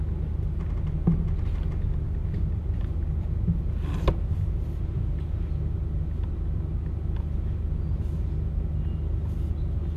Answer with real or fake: real